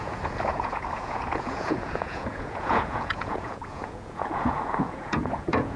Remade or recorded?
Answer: remade